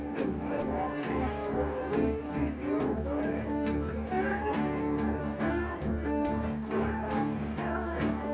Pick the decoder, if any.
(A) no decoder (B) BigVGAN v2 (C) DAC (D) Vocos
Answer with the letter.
C